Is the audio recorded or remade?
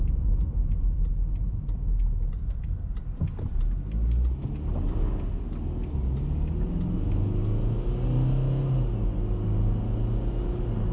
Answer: recorded